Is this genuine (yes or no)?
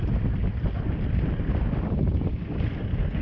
yes